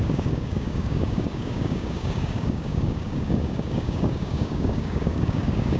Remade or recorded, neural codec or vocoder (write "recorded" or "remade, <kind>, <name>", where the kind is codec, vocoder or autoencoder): remade, codec, DAC